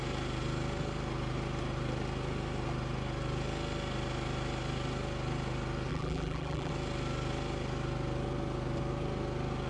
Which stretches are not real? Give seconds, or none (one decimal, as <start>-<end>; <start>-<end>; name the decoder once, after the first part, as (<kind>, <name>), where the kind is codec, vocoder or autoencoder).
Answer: 5.9-6.7 (vocoder, BigVGAN v2)